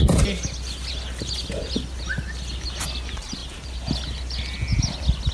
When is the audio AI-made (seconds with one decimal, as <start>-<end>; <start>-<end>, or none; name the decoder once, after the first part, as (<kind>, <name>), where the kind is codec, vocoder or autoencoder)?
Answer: none